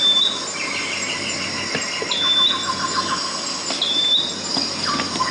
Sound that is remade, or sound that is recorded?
recorded